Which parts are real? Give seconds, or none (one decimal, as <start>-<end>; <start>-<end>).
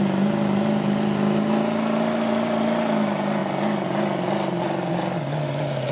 0.0-5.9